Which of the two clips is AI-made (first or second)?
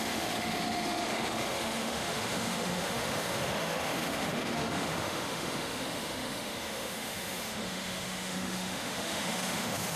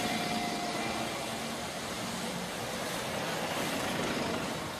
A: first